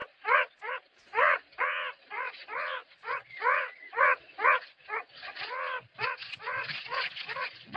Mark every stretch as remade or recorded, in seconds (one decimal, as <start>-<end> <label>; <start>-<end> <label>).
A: 0.0-7.8 remade